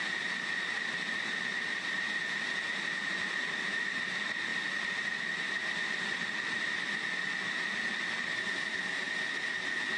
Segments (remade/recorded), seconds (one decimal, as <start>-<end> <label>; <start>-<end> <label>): 0.0-1.5 recorded; 1.5-3.8 remade; 3.8-4.5 recorded; 4.5-9.6 remade; 9.6-10.0 recorded